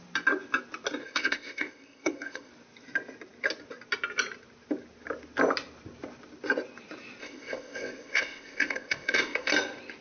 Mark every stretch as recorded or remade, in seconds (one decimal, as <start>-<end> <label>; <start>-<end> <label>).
0.0-1.0 recorded; 1.0-2.5 remade; 2.5-7.2 recorded; 7.2-9.5 remade; 9.5-10.0 recorded